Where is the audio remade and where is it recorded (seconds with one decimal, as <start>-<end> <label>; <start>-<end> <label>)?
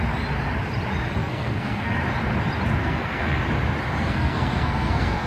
0.0-1.2 recorded; 1.2-2.0 remade; 2.0-2.8 recorded; 2.8-3.4 remade; 3.4-4.0 recorded; 4.0-5.3 remade